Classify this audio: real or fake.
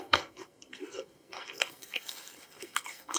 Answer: fake